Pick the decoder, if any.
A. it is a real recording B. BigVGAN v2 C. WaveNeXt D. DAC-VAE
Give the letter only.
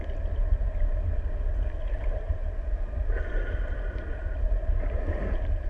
B